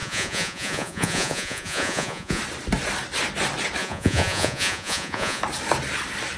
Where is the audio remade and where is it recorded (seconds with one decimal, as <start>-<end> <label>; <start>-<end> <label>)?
0.0-2.4 remade; 2.4-3.8 recorded; 3.8-5.4 remade; 5.4-6.4 recorded